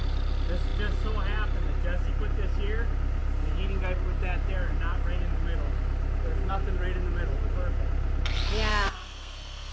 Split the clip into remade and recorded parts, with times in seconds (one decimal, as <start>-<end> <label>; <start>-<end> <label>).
0.0-8.7 recorded; 8.7-9.7 remade